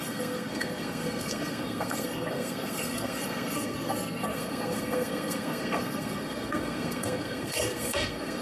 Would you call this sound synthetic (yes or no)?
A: yes